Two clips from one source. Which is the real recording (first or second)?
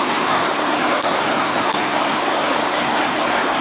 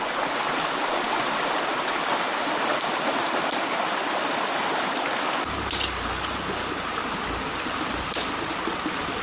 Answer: second